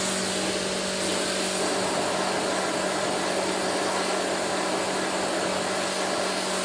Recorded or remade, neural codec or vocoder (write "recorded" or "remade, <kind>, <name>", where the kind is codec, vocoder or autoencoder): recorded